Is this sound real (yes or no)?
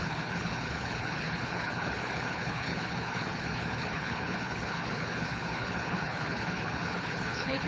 no